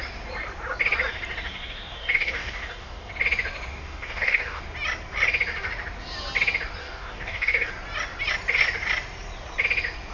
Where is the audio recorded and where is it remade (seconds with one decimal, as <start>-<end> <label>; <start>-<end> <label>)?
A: 0.0-1.5 recorded; 1.5-3.1 remade; 3.1-3.7 recorded; 3.7-4.6 remade; 4.6-6.8 recorded; 6.8-7.7 remade; 7.7-10.1 recorded